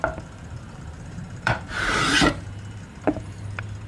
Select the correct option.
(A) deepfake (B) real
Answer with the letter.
A